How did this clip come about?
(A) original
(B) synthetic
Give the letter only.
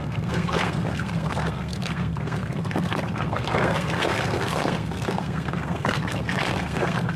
B